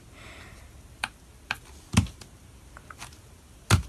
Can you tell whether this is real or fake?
real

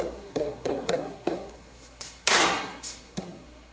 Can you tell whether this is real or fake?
fake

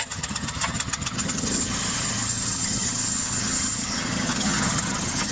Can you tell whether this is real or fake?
fake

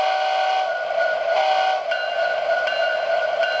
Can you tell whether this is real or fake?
real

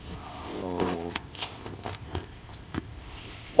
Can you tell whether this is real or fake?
fake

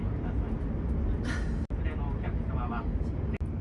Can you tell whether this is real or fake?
real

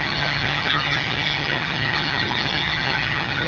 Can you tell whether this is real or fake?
fake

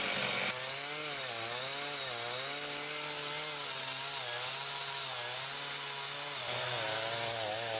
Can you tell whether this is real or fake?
real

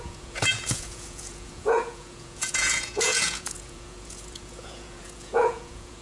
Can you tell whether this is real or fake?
fake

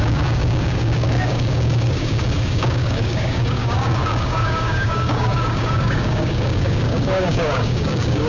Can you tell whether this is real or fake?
fake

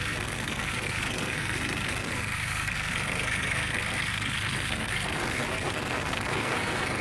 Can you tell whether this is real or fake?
fake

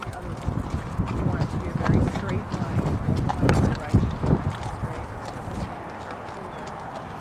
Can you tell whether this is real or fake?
real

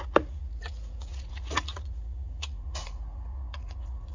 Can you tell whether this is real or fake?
fake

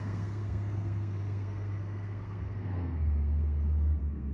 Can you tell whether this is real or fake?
fake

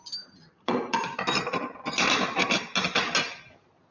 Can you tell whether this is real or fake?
real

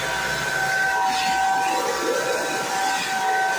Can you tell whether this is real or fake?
real